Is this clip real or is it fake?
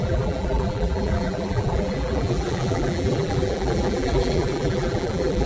fake